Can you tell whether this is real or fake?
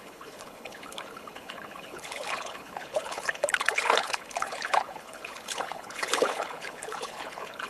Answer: fake